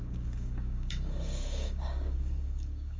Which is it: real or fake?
fake